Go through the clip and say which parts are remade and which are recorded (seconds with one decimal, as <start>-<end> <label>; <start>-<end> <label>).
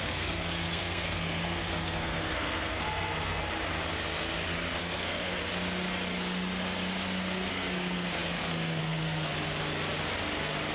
0.0-3.4 remade; 3.4-4.8 recorded; 4.8-5.4 remade; 5.4-7.5 recorded; 7.5-9.3 remade; 9.3-10.7 recorded